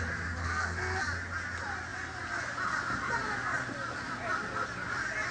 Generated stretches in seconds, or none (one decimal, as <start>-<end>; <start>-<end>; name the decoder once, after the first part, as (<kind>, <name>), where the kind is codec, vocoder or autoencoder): 0.4-1.0 (codec, SNAC)